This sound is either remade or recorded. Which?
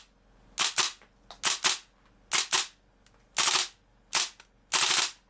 recorded